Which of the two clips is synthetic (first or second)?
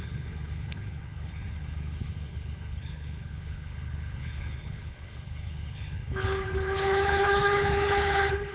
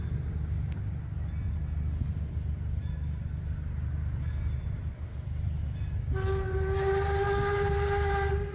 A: first